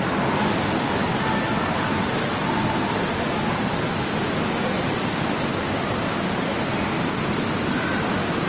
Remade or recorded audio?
recorded